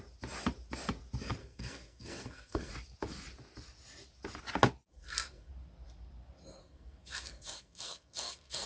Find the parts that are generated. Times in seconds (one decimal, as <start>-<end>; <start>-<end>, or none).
1.4-2.7; 4.9-5.5; 6.6-8.7